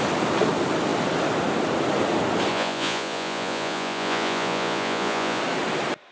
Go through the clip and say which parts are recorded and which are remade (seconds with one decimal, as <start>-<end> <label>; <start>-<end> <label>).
0.0-2.5 recorded; 2.5-5.4 remade; 5.4-6.1 recorded